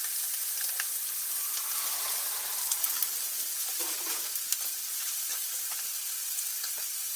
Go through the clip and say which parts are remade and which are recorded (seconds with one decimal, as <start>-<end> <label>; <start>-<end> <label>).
0.0-7.2 recorded